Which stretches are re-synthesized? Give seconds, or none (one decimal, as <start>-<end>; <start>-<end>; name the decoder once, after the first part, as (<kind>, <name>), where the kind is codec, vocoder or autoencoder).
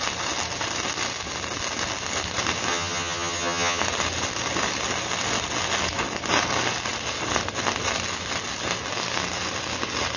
2.7-3.8 (vocoder, HiFi-GAN)